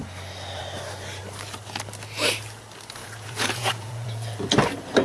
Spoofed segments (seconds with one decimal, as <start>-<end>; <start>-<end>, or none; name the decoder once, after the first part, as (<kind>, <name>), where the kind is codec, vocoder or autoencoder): 3.0-4.5 (vocoder, Vocos)